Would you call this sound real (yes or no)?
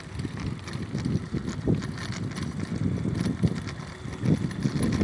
yes